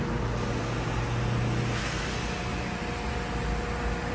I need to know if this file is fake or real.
real